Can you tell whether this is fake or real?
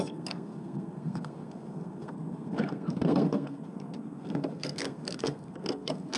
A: fake